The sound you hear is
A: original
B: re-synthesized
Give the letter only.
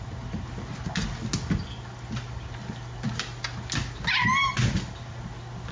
A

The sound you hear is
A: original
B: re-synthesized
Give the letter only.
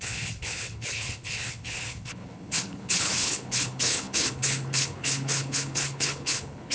B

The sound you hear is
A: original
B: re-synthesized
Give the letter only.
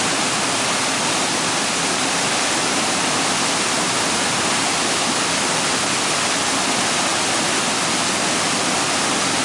A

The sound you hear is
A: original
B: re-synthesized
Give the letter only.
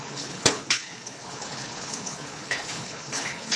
B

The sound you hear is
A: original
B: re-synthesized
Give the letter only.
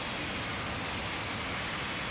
A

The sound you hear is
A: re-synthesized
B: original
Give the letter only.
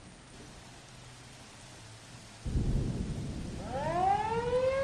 B